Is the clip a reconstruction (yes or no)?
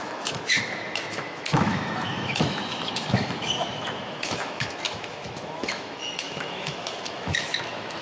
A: yes